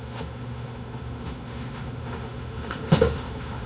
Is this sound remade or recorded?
remade